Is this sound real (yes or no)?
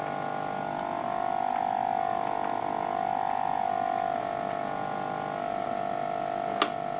yes